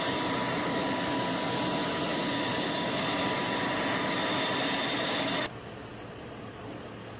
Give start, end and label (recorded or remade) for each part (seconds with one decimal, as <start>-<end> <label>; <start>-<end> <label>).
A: 0.0-7.2 recorded